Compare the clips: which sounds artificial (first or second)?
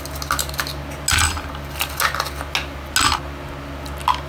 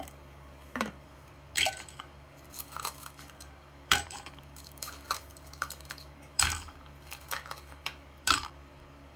second